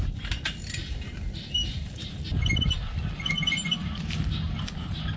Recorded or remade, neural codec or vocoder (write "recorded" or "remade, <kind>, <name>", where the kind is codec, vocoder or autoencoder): recorded